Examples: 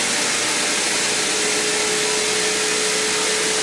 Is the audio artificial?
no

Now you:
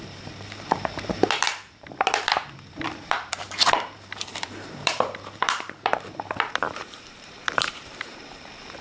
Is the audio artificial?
yes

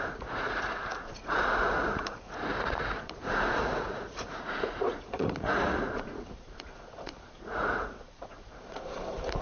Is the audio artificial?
yes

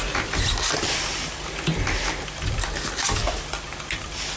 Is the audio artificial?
no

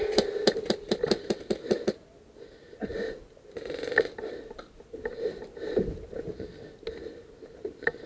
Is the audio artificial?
no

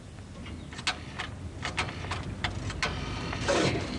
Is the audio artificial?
no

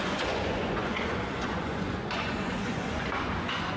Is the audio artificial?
yes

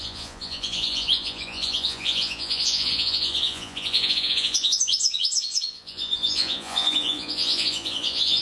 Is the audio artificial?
yes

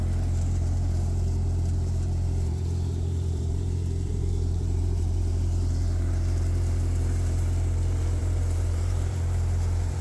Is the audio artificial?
yes